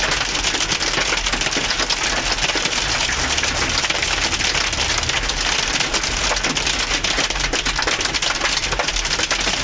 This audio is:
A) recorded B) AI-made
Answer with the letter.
A